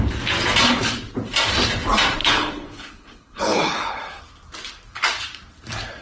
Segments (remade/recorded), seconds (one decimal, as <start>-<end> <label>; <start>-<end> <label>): 0.0-2.2 recorded; 2.2-4.2 remade; 4.2-6.0 recorded